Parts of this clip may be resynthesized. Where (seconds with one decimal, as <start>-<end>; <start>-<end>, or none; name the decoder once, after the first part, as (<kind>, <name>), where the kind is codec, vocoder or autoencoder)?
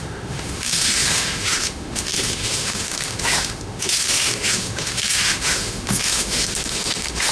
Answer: 0.0-7.3 (autoencoder, DAC-VAE)